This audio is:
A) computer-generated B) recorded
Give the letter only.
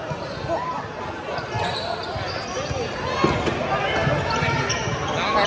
B